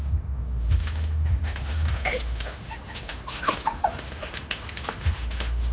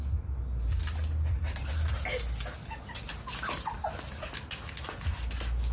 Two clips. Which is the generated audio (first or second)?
first